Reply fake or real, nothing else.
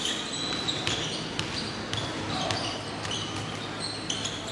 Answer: real